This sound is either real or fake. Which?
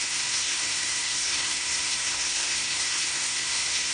fake